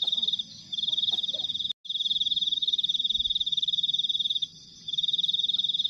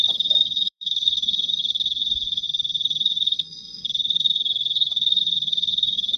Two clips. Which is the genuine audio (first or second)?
first